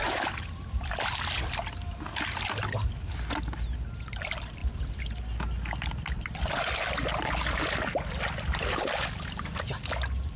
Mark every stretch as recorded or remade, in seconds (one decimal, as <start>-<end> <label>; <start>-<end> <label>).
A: 0.0-10.4 recorded